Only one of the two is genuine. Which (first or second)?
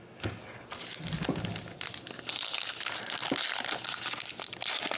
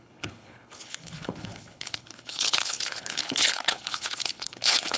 first